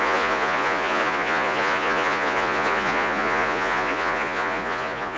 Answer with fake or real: fake